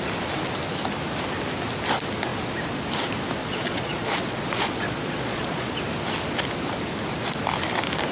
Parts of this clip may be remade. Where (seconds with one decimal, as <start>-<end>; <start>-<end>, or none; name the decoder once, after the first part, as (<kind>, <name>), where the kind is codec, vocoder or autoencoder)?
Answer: 3.4-5.8 (vocoder, Vocos)